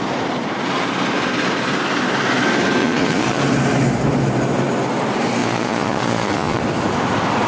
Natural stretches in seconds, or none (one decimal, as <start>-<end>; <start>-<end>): 0.0-2.8; 3.4-5.4; 6.6-7.5